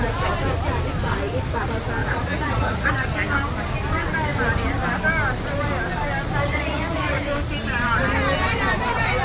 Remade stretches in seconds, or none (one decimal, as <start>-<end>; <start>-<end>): 2.0-2.9; 6.5-7.2